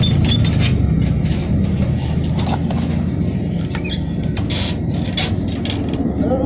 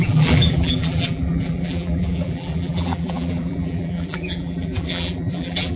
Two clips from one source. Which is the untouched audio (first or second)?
first